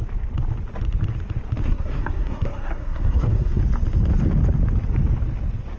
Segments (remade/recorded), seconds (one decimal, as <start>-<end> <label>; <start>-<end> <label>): 0.0-1.6 recorded; 1.6-3.6 remade; 3.6-5.8 recorded